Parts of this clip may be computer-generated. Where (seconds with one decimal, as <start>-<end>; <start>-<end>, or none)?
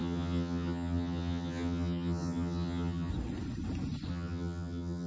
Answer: 0.0-3.1; 4.1-5.1